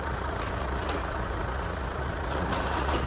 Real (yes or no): no